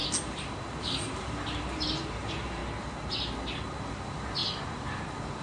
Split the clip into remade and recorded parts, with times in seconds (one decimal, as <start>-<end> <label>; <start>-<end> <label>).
0.0-0.8 recorded; 0.8-2.6 remade; 2.6-3.9 recorded; 3.9-5.4 remade